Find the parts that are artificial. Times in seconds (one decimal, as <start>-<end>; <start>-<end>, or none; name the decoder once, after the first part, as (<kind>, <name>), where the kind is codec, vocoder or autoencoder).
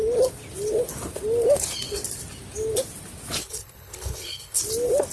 3.4-4.6 (codec, HILCodec)